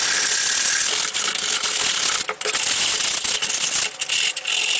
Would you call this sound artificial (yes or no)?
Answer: no